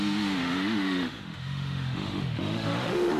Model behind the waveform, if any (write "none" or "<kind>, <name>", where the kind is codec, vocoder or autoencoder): autoencoder, DAC-VAE